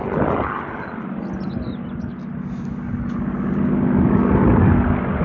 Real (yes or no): yes